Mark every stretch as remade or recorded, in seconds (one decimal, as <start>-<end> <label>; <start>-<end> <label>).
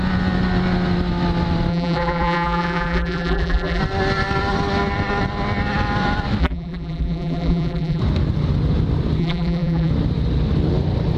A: 0.0-1.7 recorded; 1.7-3.8 remade; 3.8-6.4 recorded; 6.4-8.0 remade; 8.0-9.2 recorded; 9.2-9.9 remade; 9.9-11.2 recorded